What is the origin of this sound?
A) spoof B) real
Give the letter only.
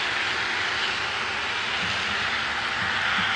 B